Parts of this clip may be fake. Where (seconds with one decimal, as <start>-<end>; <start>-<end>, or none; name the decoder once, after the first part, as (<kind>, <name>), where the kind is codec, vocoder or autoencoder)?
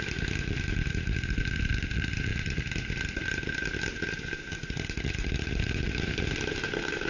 none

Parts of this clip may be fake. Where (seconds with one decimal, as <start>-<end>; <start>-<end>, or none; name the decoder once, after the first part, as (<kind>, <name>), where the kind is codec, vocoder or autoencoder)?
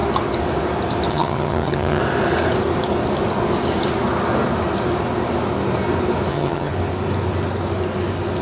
1.1-2.0 (vocoder, HiFi-GAN); 6.3-6.7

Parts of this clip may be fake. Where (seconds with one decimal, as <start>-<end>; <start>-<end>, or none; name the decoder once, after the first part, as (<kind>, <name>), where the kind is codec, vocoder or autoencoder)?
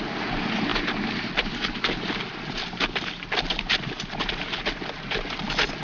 none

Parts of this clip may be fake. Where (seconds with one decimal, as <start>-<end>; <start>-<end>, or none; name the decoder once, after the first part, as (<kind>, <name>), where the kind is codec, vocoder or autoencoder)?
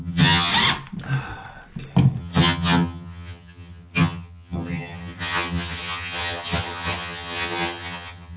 0.0-0.5 (vocoder, HiFi-GAN); 2.2-8.4